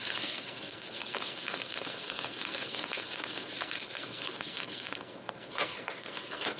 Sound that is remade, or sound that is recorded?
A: remade